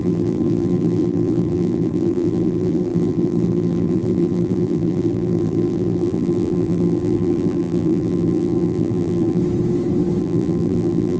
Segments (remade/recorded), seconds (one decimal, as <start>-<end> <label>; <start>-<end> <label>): 0.0-9.4 remade; 9.4-10.2 recorded; 10.2-11.2 remade

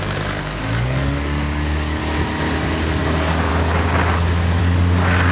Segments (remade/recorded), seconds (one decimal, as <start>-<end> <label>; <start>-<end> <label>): 0.0-2.0 remade; 2.0-3.0 recorded; 3.0-3.5 remade; 3.5-4.6 recorded; 4.6-5.3 remade

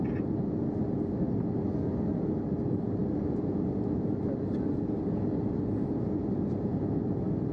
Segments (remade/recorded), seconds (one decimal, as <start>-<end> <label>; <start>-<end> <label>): 0.0-7.5 recorded

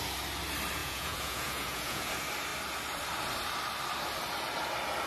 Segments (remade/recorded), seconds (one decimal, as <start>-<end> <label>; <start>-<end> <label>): 0.0-0.8 recorded; 0.8-2.1 remade; 2.1-5.1 recorded

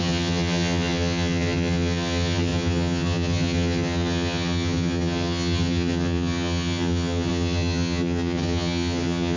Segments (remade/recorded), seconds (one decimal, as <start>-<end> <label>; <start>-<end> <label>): 0.0-9.4 remade

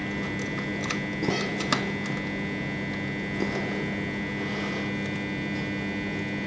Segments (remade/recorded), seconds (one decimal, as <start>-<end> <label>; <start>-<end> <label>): 0.0-6.5 recorded

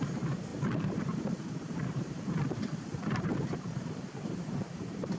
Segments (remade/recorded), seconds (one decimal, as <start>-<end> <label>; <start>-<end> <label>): 0.0-5.2 remade

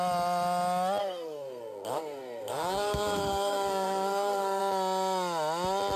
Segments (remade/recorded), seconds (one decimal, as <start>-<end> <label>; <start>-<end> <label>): 0.0-1.0 recorded; 1.0-4.6 remade; 4.6-6.0 recorded